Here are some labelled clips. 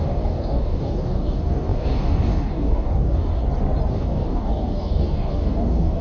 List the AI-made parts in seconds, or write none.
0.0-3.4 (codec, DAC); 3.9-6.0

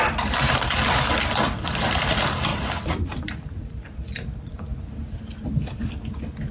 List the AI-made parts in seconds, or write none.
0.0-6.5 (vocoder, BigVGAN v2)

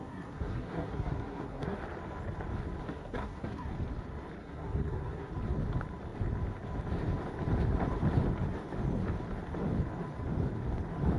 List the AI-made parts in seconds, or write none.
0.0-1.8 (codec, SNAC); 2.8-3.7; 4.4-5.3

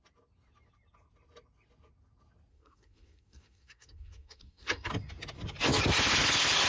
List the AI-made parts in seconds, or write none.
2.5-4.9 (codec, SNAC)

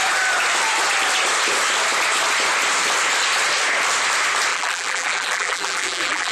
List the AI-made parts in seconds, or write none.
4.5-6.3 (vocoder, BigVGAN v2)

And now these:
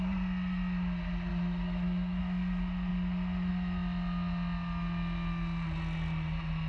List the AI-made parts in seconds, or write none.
1.3-2.2 (autoencoder, DAC-VAE)